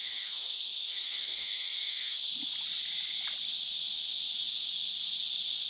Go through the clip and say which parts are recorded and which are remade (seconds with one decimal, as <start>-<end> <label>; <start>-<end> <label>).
0.0-2.3 remade; 2.3-5.7 recorded